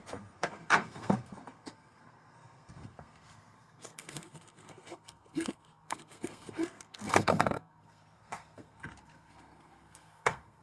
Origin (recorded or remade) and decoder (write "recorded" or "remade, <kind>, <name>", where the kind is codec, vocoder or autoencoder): remade, codec, SNAC